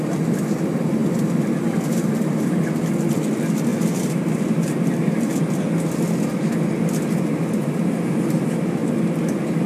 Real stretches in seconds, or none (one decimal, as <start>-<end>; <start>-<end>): 0.0-9.7